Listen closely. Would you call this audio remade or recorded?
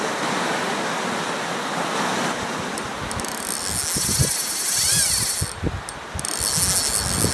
recorded